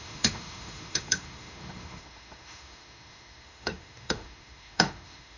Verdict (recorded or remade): remade